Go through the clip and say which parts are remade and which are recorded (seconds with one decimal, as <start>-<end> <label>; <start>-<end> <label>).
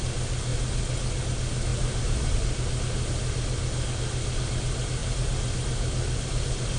0.0-1.7 recorded; 1.7-2.4 remade; 2.4-5.0 recorded; 5.0-6.8 remade